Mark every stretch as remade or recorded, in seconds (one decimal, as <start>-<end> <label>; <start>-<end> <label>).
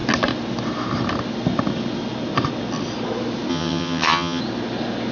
0.0-3.5 recorded; 3.5-4.4 remade; 4.4-5.1 recorded